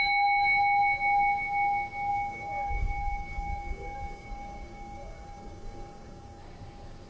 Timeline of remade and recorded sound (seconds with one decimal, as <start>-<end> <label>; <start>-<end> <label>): 0.0-2.1 recorded; 2.1-6.4 remade; 6.4-7.1 recorded